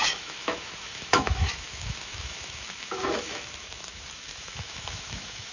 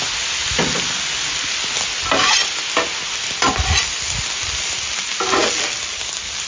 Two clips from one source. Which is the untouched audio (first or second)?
second